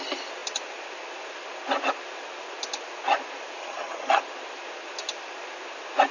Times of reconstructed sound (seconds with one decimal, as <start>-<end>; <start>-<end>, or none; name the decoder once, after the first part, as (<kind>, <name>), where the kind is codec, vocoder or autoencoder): 3.6-4.2 (vocoder, HiFi-GAN)